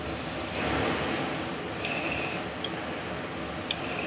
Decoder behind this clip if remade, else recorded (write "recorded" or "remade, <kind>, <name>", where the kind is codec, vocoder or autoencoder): recorded